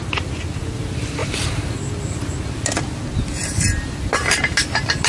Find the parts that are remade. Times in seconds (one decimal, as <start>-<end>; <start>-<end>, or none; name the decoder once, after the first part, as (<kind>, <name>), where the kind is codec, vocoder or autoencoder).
none